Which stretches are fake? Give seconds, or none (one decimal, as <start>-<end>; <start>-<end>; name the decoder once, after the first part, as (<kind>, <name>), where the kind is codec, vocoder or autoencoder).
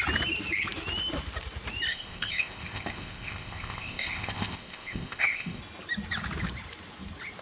1.9-5.6 (codec, ZipCodec)